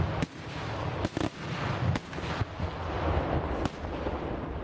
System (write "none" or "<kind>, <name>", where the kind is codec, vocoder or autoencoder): none